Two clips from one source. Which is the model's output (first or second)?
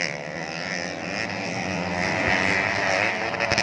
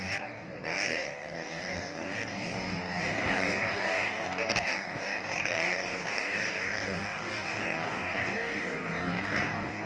second